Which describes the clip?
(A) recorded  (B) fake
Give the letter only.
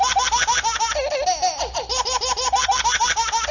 A